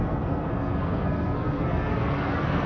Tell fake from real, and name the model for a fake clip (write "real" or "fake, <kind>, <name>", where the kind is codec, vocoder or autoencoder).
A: fake, codec, SNAC